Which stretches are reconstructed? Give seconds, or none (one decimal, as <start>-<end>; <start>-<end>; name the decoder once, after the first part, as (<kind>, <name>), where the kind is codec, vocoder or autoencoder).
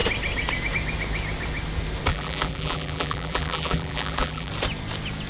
2.1-4.5 (vocoder, BigVGAN v2)